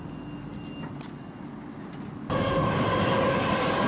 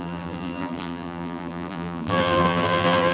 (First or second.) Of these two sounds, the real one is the first